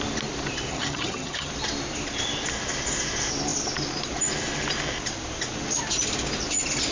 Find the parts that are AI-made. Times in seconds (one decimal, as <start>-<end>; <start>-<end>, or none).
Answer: 0.7-1.5